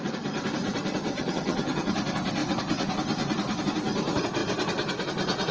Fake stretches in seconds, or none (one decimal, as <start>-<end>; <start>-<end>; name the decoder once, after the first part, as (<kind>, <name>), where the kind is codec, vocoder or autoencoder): 1.1-1.9 (vocoder, HiFi-GAN)